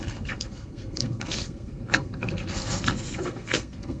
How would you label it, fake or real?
fake